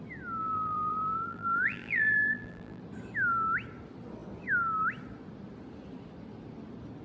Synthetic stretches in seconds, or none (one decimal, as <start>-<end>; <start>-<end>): 0.4-2.8